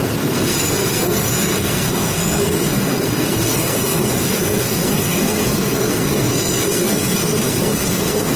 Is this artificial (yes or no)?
yes